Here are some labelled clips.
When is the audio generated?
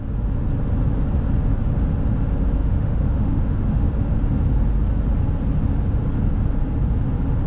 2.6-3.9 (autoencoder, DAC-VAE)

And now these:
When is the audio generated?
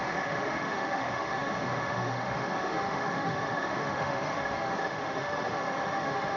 0.0-6.4 (autoencoder, DAC-VAE)